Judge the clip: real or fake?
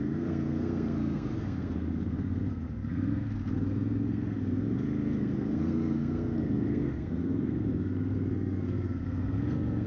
fake